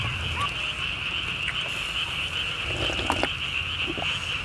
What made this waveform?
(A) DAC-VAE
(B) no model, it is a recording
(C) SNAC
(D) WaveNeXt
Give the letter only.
B